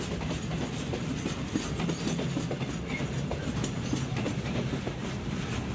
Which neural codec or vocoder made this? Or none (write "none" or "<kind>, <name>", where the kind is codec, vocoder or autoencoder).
none